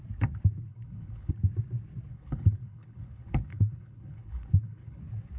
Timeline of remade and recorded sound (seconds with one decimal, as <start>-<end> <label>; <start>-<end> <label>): 0.0-0.7 recorded; 0.7-1.3 remade; 1.3-2.1 recorded; 2.1-5.0 remade; 5.0-5.4 recorded